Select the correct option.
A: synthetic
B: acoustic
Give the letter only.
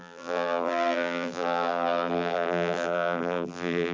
A